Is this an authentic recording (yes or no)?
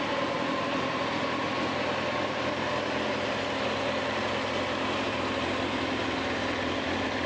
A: yes